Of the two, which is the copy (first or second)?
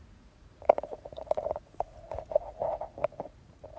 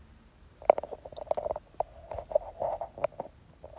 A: first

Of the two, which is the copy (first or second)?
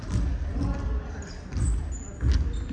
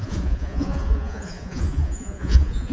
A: second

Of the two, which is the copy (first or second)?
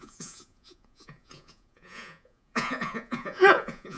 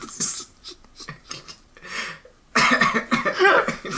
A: first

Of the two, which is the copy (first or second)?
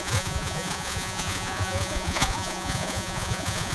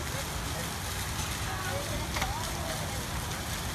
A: first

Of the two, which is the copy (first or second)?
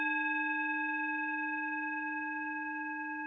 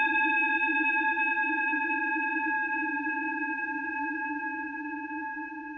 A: second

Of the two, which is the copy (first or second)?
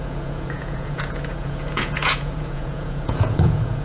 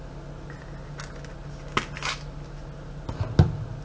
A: first